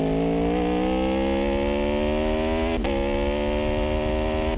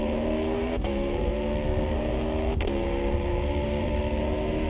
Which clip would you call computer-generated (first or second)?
second